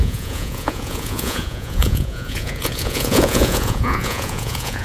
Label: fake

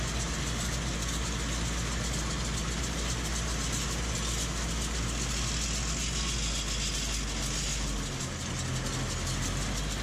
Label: real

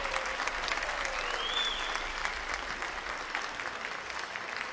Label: real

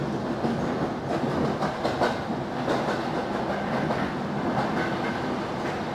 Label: real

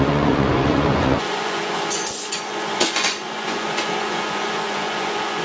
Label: fake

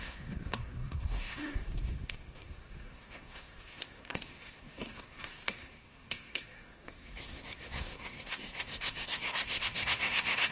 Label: fake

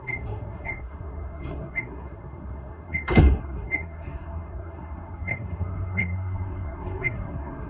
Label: fake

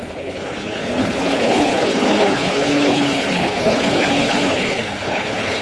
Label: fake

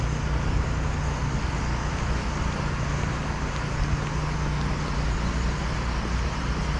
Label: real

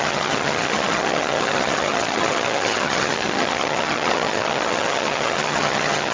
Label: fake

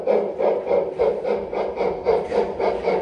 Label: real